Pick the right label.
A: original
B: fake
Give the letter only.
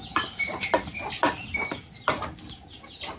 A